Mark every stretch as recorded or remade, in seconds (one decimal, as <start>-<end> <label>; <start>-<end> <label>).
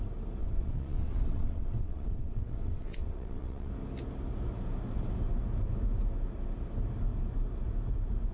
0.0-0.4 recorded; 0.4-3.7 remade; 3.7-8.3 recorded